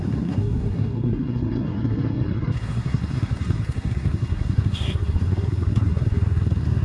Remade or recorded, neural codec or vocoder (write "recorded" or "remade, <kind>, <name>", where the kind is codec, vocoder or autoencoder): remade, codec, SNAC